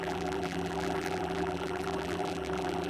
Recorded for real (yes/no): no